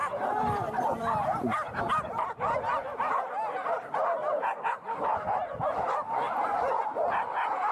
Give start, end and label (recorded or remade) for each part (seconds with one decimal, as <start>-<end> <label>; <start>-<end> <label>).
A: 0.0-1.8 remade; 1.8-2.7 recorded; 2.7-6.6 remade; 6.6-7.7 recorded